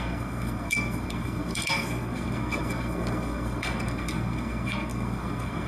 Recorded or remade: remade